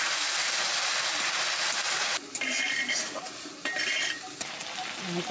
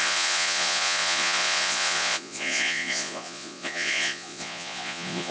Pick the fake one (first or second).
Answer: second